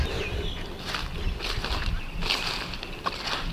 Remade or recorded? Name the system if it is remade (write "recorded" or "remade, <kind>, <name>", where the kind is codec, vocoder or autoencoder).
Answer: recorded